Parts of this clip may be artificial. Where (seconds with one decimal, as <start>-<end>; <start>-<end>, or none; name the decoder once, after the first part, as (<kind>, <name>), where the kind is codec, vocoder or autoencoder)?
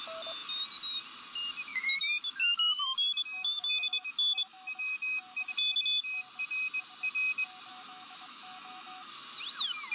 1.7-5.5 (autoencoder, DAC-VAE); 7.7-9.1